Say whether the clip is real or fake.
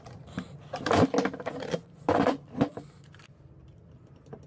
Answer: real